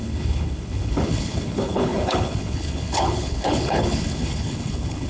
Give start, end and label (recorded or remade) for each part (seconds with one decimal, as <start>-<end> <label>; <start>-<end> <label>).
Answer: 0.0-5.1 remade